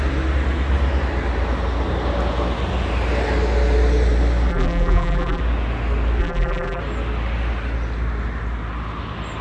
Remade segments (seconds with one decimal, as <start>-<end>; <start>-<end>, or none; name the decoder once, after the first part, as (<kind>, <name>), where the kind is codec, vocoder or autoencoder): 4.5-5.4 (vocoder, BigVGAN v2); 6.2-6.8